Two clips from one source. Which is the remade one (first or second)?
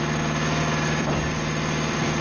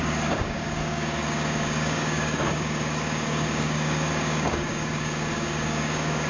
second